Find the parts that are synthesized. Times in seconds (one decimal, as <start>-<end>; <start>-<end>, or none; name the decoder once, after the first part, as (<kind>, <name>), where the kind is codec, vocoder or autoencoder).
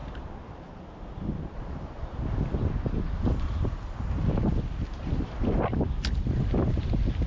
none